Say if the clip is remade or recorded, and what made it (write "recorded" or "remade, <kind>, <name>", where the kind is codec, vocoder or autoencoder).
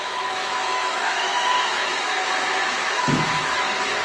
remade, autoencoder, DAC-VAE